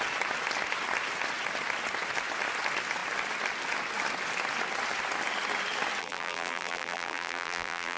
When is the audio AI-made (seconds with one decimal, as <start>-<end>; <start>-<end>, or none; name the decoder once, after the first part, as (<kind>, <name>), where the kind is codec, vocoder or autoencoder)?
6.0-8.0 (vocoder, BigVGAN v2)